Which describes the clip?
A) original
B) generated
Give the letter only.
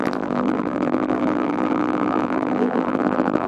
B